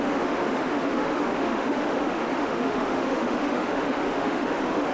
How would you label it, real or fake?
fake